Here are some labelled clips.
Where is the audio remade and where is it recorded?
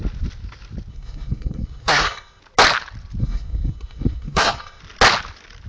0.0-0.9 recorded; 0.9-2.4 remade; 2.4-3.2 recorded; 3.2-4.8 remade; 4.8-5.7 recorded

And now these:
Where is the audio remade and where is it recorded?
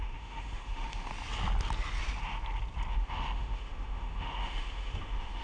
0.0-1.1 remade; 1.1-2.9 recorded; 2.9-5.4 remade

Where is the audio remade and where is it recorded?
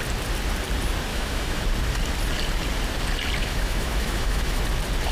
0.0-1.1 recorded; 1.1-1.6 remade; 1.6-3.4 recorded; 3.4-4.6 remade; 4.6-5.1 recorded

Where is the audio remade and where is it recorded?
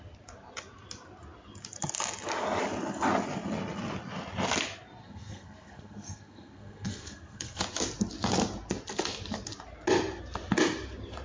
0.0-5.0 recorded; 5.0-7.6 remade; 7.6-11.2 recorded